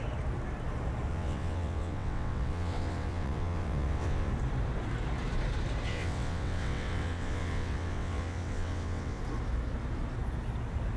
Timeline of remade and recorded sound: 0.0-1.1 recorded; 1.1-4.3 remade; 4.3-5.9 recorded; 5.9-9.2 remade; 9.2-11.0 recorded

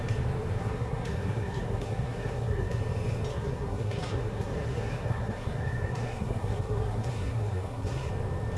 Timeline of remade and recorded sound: 0.0-0.6 recorded; 0.6-2.8 remade; 2.8-3.3 recorded; 3.3-8.1 remade; 8.1-8.6 recorded